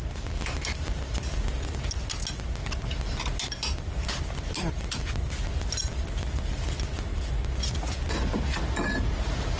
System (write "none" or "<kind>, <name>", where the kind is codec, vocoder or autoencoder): none